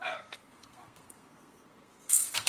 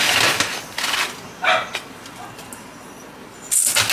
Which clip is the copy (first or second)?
first